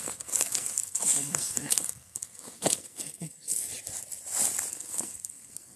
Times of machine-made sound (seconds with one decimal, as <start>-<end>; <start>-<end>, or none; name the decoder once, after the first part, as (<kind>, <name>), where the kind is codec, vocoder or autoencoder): 0.0-3.7 (codec, SNAC); 4.7-5.8